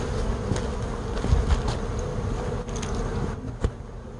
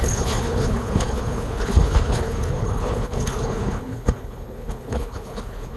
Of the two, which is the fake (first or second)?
second